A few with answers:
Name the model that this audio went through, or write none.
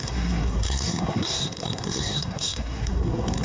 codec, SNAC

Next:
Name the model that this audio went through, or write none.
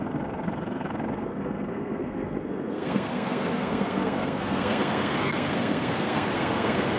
codec, SNAC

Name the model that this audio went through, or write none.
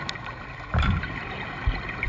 none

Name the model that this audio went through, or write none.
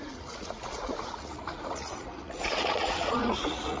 vocoder, Vocos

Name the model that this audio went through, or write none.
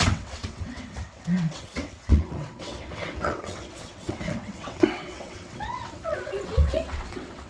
vocoder, WaveNeXt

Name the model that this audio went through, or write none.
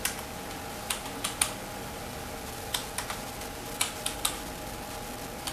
none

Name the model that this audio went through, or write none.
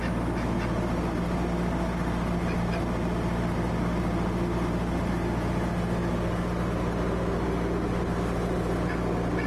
none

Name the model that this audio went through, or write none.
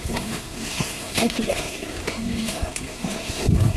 codec, SNAC